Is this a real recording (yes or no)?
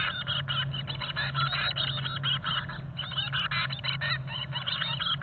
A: yes